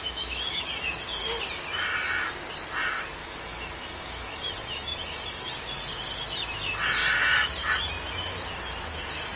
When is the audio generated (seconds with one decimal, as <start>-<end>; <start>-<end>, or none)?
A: 0.0-0.7; 3.2-5.5